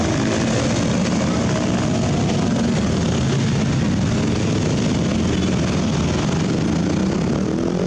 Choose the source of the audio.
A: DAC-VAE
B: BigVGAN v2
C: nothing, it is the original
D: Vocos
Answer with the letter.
C